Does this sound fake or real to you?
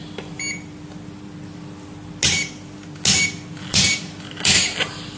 real